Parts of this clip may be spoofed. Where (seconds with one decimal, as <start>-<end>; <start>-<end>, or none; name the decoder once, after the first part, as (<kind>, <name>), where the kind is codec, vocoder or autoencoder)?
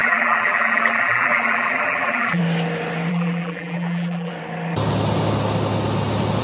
0.0-2.4 (vocoder, BigVGAN v2); 3.1-4.3